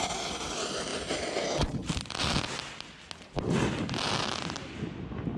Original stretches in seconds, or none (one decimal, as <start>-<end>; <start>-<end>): 0.0-5.4